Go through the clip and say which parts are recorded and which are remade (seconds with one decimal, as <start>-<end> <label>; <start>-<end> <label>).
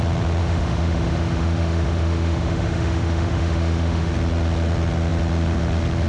0.0-0.4 recorded; 0.4-4.1 remade; 4.1-6.1 recorded